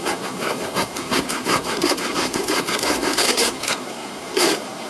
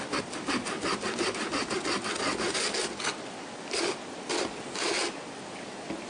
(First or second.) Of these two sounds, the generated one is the first